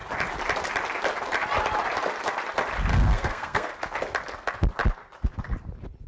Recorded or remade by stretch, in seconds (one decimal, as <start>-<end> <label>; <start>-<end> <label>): 0.0-2.9 recorded; 2.9-3.7 remade; 3.7-6.1 recorded